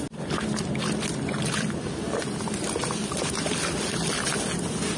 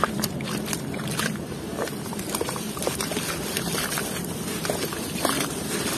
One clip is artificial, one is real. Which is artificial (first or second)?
second